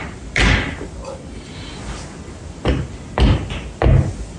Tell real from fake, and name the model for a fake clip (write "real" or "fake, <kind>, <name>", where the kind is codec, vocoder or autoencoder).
real